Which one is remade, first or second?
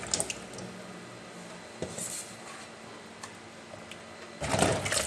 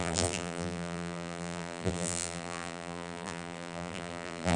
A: second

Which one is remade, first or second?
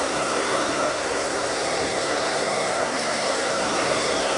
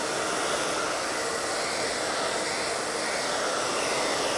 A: first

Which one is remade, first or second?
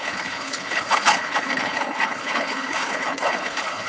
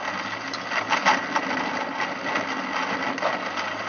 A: first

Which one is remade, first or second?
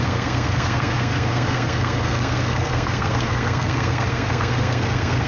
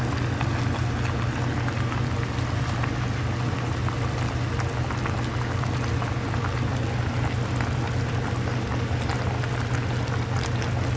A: first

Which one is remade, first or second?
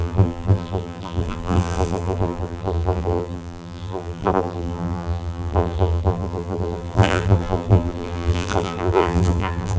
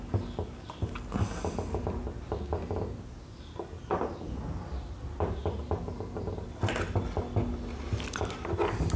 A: first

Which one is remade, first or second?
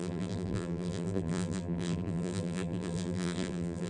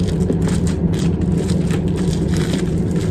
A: first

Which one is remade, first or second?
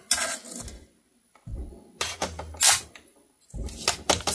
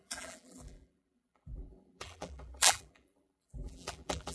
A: second